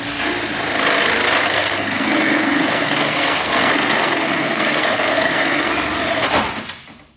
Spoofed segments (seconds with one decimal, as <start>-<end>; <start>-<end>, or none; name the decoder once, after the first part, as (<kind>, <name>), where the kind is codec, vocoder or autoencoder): 1.4-5.7 (codec, SNAC)